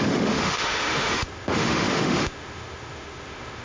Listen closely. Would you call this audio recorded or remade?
remade